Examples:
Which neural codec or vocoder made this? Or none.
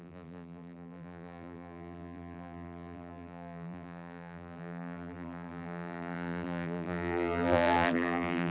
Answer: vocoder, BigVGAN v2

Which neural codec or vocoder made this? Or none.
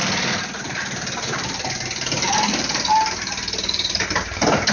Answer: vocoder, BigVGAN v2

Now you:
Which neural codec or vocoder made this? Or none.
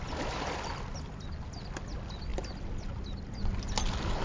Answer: none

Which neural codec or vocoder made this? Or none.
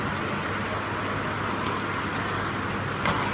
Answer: none